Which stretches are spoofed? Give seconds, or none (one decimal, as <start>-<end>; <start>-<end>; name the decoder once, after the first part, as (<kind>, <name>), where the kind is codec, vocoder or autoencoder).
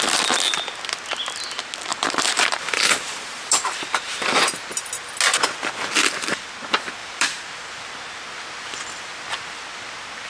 1.9-4.9 (vocoder, BigVGAN v2); 7.0-7.9